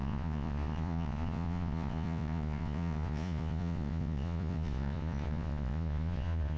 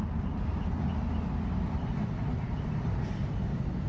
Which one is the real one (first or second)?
second